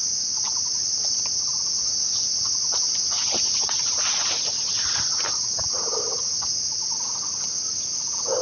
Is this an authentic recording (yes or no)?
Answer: yes